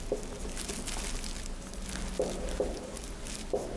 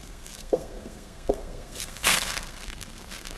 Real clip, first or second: first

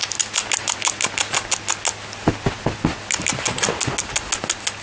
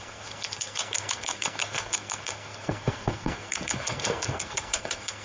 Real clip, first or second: first